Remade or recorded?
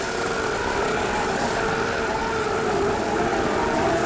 remade